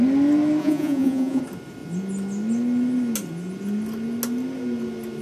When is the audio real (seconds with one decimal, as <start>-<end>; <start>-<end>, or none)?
0.0-0.6; 1.4-5.2